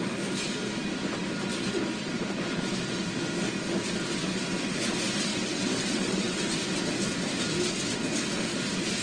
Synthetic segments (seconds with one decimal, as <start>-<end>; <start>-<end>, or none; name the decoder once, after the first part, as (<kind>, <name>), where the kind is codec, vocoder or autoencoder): 5.3-6.4 (vocoder, WaveNeXt)